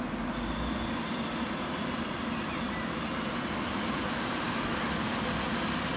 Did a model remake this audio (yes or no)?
no